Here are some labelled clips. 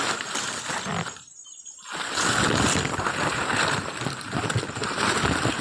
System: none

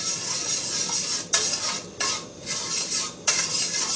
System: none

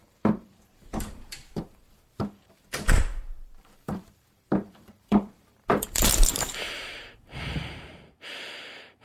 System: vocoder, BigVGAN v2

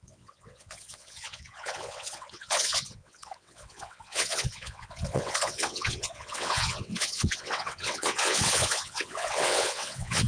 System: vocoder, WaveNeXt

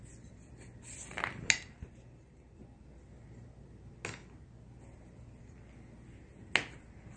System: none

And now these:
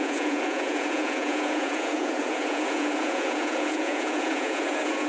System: vocoder, Vocos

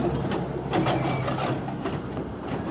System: none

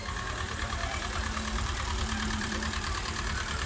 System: vocoder, BigVGAN v2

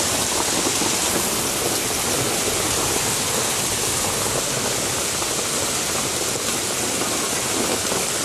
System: none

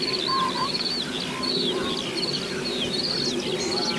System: none